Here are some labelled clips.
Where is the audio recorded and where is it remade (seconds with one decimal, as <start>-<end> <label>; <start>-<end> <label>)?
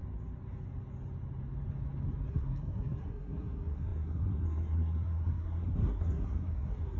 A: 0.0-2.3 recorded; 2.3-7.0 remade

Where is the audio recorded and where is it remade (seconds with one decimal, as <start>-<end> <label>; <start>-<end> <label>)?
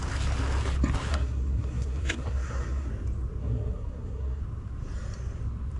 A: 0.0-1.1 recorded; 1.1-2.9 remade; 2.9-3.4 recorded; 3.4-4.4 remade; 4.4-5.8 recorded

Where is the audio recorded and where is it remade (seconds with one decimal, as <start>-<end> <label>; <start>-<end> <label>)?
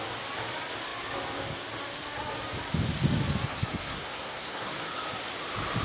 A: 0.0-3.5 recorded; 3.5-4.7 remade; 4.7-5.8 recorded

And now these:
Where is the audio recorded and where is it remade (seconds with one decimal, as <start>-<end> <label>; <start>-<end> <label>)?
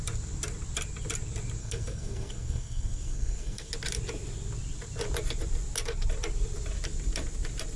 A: 0.0-1.6 recorded; 1.6-3.7 remade; 3.7-7.8 recorded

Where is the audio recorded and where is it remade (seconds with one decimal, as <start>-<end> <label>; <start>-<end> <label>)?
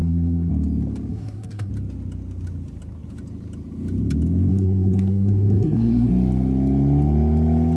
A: 0.0-0.5 remade; 0.5-1.1 recorded; 1.1-1.7 remade; 1.7-4.5 recorded; 4.5-6.1 remade; 6.1-7.8 recorded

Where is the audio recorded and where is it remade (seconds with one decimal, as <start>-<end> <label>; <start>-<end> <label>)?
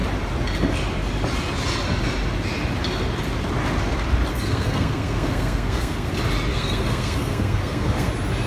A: 0.0-4.3 recorded; 4.3-6.1 remade; 6.1-6.5 recorded; 6.5-8.1 remade; 8.1-8.5 recorded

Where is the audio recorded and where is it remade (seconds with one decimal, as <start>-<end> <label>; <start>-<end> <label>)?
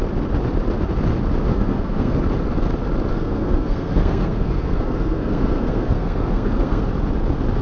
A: 0.0-1.5 recorded; 1.5-2.2 remade; 2.2-3.1 recorded; 3.1-6.9 remade; 6.9-7.6 recorded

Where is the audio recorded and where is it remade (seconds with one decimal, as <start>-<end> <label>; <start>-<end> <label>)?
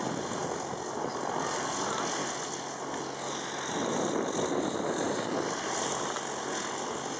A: 0.0-7.2 recorded